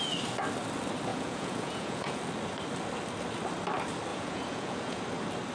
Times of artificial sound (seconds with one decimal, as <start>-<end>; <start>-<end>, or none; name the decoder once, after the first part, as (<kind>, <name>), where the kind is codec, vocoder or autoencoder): 1.1-2.2 (vocoder, Vocos); 4.1-5.0